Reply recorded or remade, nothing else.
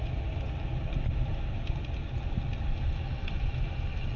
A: recorded